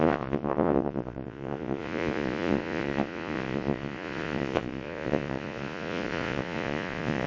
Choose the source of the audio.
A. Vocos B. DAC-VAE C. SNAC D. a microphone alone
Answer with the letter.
A